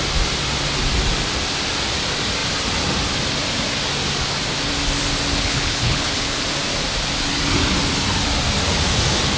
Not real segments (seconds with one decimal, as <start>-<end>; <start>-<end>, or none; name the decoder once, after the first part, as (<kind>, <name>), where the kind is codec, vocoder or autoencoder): 5.3-6.4 (codec, HILCodec)